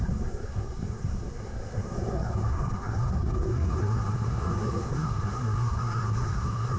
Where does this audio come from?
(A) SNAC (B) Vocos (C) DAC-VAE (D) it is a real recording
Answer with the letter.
A